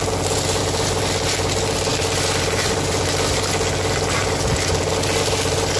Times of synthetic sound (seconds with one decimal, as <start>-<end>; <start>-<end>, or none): none